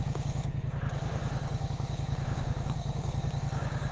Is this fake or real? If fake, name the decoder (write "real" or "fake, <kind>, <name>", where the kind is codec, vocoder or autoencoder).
fake, codec, DAC